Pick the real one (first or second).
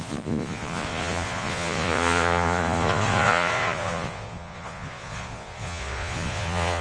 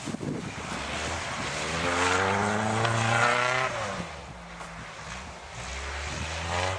second